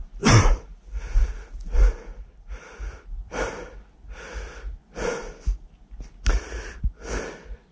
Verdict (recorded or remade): recorded